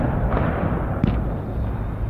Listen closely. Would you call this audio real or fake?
real